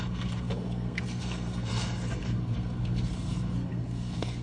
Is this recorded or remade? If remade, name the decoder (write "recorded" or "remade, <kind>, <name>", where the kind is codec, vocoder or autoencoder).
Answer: remade, codec, SNAC